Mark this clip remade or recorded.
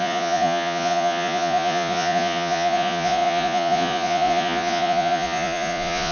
remade